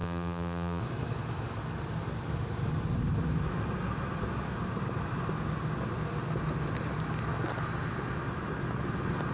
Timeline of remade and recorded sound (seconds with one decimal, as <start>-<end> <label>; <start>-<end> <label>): 0.0-0.8 remade; 0.8-9.3 recorded